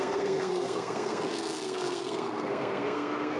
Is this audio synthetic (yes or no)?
yes